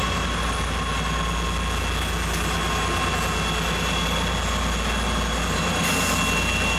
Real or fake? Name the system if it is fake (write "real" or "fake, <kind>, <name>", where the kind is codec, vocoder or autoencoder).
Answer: real